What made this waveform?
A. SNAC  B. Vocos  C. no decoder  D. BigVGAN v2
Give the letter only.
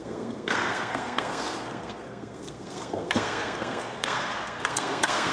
A